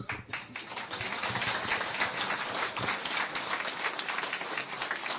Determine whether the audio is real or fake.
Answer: real